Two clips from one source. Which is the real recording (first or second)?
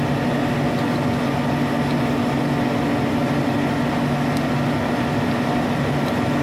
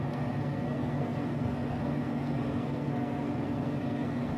first